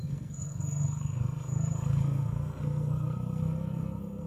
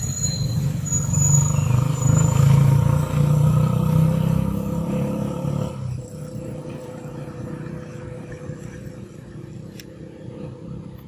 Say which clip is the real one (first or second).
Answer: second